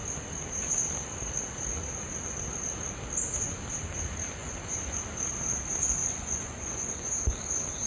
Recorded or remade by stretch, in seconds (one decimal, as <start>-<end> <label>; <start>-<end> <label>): 0.0-4.4 recorded; 4.4-5.0 remade; 5.0-6.0 recorded; 6.0-7.2 remade; 7.2-7.9 recorded